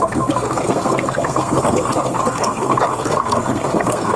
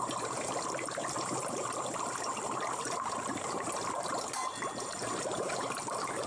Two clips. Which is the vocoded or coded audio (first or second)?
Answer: first